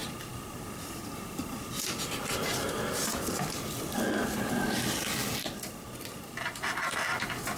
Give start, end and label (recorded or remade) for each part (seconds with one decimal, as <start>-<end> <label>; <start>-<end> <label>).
0.0-7.6 recorded